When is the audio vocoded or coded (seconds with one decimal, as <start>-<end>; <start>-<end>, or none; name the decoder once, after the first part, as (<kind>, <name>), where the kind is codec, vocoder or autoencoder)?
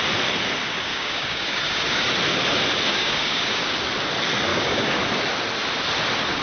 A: 0.9-2.1 (codec, DAC); 2.9-3.6; 4.5-5.0